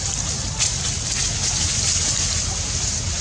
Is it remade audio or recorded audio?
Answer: recorded